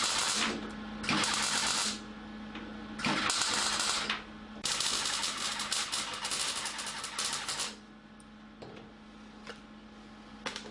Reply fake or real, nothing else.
real